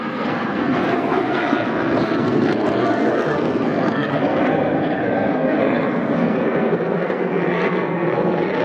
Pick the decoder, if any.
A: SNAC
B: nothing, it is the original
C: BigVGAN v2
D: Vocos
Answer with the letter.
A